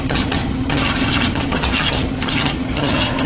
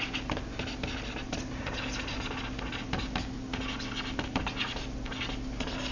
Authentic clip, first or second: second